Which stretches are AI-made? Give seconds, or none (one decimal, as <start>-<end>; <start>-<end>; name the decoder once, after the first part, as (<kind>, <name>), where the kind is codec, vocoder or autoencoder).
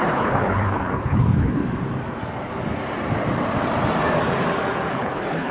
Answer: 0.0-1.6 (codec, HILCodec); 4.9-5.5